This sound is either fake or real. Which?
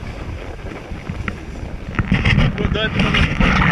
real